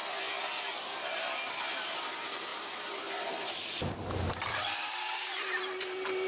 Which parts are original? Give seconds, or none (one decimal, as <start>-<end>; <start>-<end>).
0.0-0.6